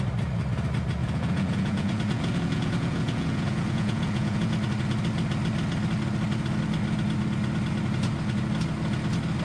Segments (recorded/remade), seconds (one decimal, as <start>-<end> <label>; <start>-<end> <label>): 0.0-1.0 recorded; 1.0-4.5 remade; 4.5-9.4 recorded